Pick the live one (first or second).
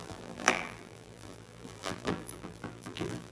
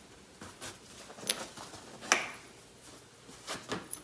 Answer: second